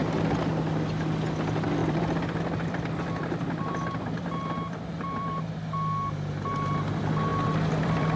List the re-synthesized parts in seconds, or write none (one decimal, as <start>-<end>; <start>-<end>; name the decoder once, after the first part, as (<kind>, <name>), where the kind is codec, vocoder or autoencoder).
1.8-5.4 (vocoder, BigVGAN v2); 7.3-8.2